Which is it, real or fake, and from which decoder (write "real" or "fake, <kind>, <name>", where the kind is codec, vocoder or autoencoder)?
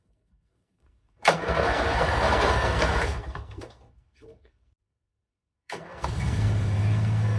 fake, codec, SNAC